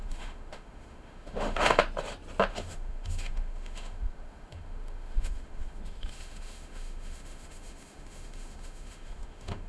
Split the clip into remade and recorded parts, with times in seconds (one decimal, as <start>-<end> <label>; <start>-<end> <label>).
0.0-1.8 remade; 1.8-2.5 recorded; 2.5-9.7 remade